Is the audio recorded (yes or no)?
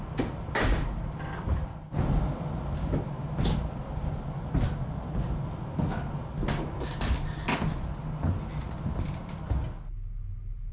yes